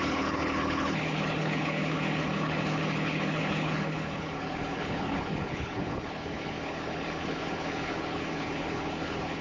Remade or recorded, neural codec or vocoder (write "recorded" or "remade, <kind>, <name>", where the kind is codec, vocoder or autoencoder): remade, codec, HILCodec